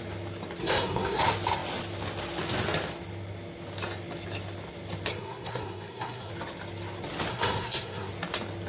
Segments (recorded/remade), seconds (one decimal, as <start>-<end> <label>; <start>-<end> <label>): 0.0-0.6 recorded; 0.6-1.2 remade; 1.2-5.1 recorded; 5.1-6.3 remade; 6.3-7.3 recorded; 7.3-8.1 remade; 8.1-8.7 recorded